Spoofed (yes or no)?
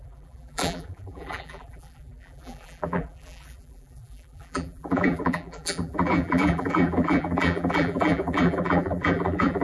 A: yes